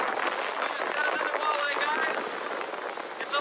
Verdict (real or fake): real